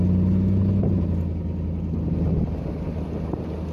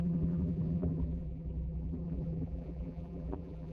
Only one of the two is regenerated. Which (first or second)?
second